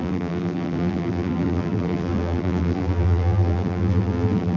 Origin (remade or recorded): remade